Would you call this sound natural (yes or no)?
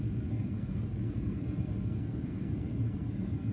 no